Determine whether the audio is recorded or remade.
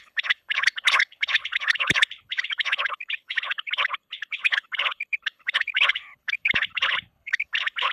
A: remade